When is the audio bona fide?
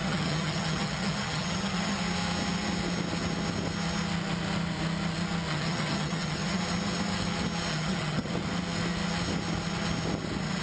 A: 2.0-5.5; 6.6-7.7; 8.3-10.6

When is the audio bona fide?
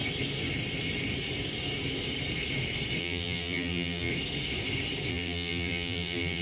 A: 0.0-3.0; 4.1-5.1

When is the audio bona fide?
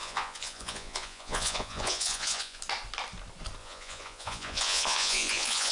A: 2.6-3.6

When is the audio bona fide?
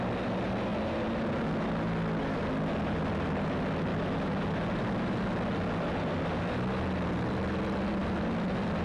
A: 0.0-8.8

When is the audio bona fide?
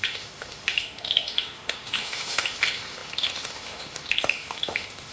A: none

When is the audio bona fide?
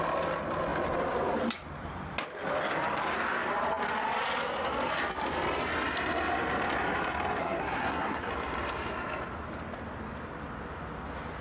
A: 0.0-7.4; 8.3-11.4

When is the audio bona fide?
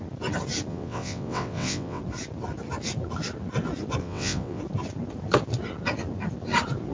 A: 0.0-0.7; 2.0-4.0; 4.6-6.9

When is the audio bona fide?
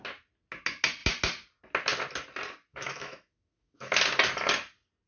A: 0.0-2.7; 4.0-5.1